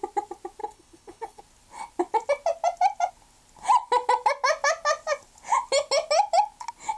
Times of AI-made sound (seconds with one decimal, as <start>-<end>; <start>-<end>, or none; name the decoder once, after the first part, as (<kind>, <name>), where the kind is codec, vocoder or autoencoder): 0.6-1.4 (codec, HILCodec)